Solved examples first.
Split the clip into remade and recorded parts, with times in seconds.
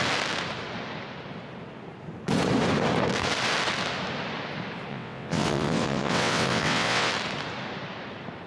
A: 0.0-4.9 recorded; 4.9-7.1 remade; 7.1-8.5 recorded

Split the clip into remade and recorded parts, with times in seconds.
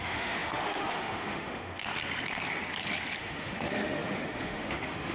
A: 0.0-1.9 remade; 1.9-3.2 recorded; 3.2-5.1 remade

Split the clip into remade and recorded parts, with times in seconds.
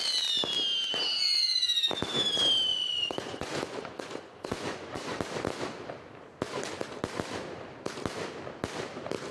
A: 0.0-2.7 recorded; 2.7-5.2 remade; 5.2-9.3 recorded